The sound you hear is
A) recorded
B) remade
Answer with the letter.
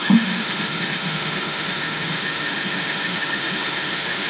B